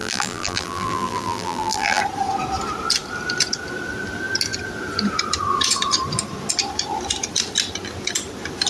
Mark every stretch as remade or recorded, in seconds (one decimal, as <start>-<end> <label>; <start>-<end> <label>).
0.0-2.0 remade; 2.0-8.7 recorded